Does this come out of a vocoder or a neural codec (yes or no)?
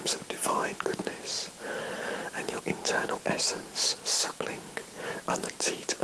yes